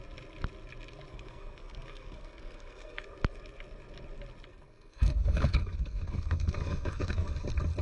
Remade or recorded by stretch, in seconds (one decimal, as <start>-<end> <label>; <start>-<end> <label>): 0.0-1.1 recorded; 1.1-3.0 remade; 3.0-4.5 recorded; 4.5-7.3 remade; 7.3-7.8 recorded